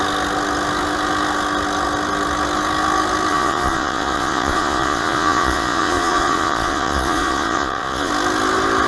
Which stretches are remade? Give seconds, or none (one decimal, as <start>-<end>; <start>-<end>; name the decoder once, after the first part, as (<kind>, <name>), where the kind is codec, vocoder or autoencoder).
3.3-8.1 (vocoder, Vocos)